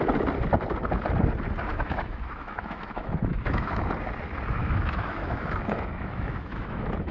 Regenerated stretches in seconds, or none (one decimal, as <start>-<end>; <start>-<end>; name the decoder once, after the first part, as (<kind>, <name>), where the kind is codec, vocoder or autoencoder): 1.7-3.9 (autoencoder, DAC-VAE); 4.6-7.1